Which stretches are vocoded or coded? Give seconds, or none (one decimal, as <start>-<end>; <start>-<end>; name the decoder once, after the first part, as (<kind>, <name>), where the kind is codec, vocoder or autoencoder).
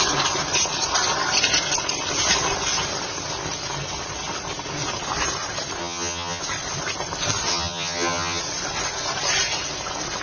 5.8-6.4 (vocoder, HiFi-GAN); 7.5-8.4